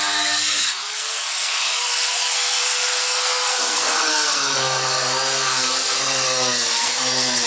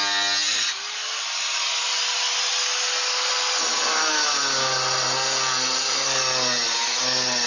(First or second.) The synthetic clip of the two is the first